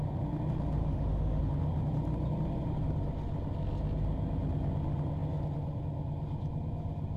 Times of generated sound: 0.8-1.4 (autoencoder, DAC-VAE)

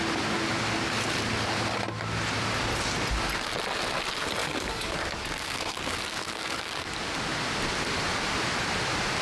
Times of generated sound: 4.4-6.9 (codec, DAC)

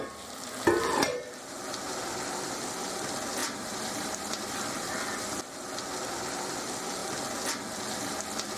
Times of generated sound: 1.1-2.0 (vocoder, BigVGAN v2); 3.4-4.4

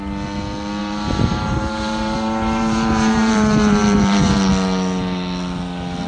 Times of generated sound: 0.8-4.5 (vocoder, BigVGAN v2)

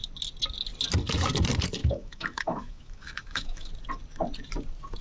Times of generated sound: 1.8-3.7 (autoencoder, DAC-VAE)

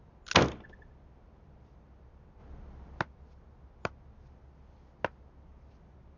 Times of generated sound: none

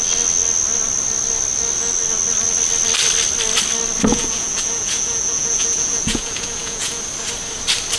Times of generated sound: 4.1-7.0 (vocoder, Vocos)